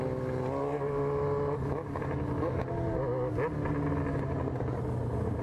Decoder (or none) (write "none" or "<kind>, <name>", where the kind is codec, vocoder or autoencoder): none